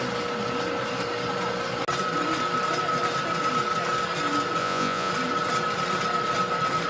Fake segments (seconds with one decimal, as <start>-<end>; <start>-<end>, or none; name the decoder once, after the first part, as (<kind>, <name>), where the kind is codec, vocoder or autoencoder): 4.6-5.1 (vocoder, Vocos)